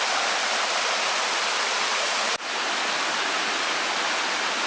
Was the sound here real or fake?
real